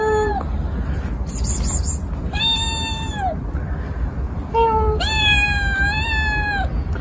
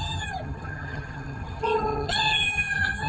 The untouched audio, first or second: first